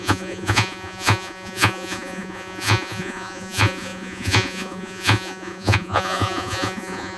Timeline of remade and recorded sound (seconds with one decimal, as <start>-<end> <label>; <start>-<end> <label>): 0.0-7.2 remade